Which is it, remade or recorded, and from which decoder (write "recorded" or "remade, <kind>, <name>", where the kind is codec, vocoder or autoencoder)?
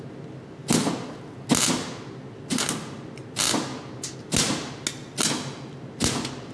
recorded